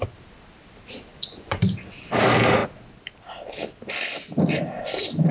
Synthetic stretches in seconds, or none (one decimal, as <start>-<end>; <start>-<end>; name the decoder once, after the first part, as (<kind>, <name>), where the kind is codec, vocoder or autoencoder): 1.1-1.6 (vocoder, Vocos)